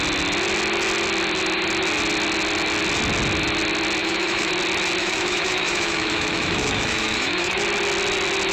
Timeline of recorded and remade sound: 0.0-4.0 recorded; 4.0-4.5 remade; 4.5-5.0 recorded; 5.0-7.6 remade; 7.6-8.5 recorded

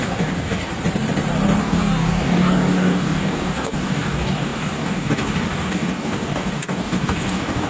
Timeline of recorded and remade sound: 0.0-0.7 remade; 0.7-1.6 recorded; 1.6-7.7 remade

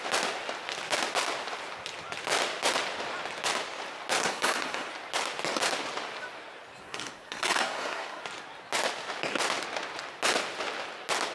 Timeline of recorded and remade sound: 0.0-4.2 recorded; 4.2-4.9 remade; 4.9-6.8 recorded; 6.8-8.2 remade; 8.2-11.3 recorded

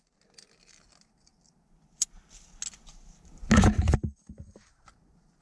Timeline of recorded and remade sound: 0.0-5.4 recorded

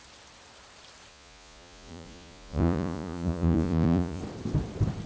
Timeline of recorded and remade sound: 0.0-1.1 recorded; 1.1-4.2 remade; 4.2-5.1 recorded

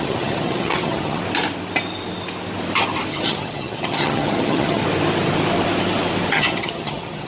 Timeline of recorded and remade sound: 0.0-1.2 remade; 1.2-3.1 recorded; 3.1-4.8 remade; 4.8-6.3 recorded; 6.3-7.3 remade

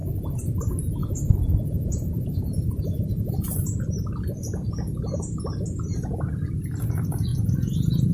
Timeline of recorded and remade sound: 0.0-1.0 recorded; 1.0-3.3 remade; 3.3-7.3 recorded; 7.3-8.1 remade

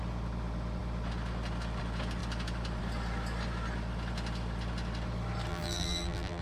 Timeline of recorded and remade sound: 0.0-5.5 recorded; 5.5-6.4 remade